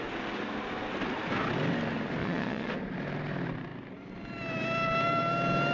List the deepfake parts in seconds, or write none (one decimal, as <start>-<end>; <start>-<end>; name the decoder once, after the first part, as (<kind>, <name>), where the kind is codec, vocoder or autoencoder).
2.2-2.7 (vocoder, Vocos)